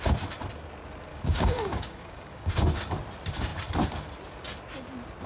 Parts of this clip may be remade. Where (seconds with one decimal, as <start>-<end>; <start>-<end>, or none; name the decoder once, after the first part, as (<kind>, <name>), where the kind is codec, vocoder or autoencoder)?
1.1-2.5 (codec, DAC)